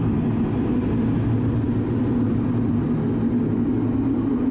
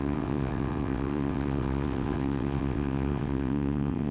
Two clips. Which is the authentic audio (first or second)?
first